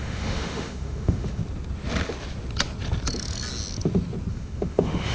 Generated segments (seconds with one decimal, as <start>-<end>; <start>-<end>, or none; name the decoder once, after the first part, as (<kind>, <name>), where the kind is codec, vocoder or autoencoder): 0.0-1.4 (autoencoder, DAC-VAE); 4.3-5.1